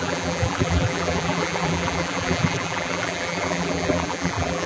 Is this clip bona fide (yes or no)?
no